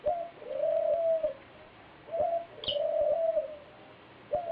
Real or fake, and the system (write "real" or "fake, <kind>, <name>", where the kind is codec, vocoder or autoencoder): real